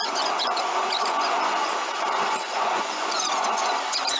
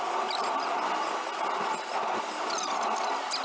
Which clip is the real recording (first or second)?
second